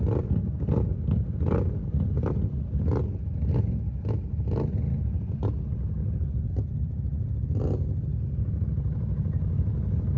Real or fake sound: real